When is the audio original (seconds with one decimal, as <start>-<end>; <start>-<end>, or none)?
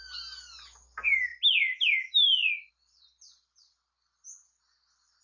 0.0-5.2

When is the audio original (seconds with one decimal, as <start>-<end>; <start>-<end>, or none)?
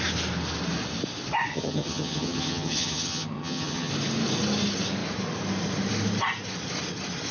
0.0-1.5; 3.9-7.3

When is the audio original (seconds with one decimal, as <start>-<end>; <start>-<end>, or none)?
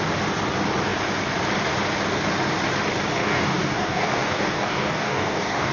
0.0-3.2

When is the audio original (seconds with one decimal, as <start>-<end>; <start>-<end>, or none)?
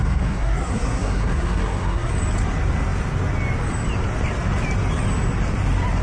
2.1-6.0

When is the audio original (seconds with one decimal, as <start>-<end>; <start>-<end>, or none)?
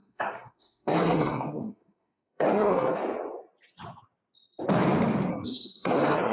3.0-5.3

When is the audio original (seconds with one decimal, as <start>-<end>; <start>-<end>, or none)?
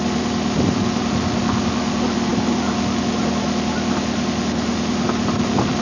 0.0-5.8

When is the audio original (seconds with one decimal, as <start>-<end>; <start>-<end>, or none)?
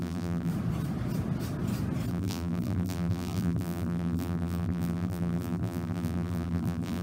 0.5-2.1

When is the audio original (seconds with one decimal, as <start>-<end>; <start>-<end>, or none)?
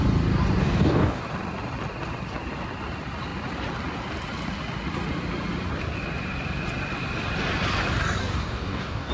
0.0-0.6; 1.2-8.2